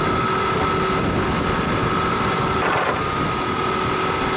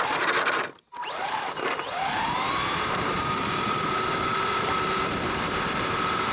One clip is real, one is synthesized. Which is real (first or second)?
first